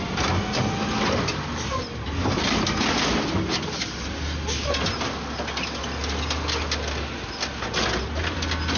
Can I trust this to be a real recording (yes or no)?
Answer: yes